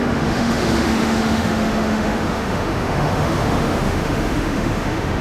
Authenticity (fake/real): fake